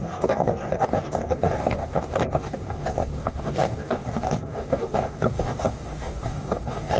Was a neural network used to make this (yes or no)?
yes